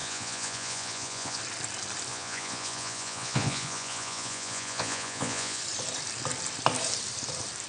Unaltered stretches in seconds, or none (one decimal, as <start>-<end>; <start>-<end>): 1.4-2.1; 5.6-7.7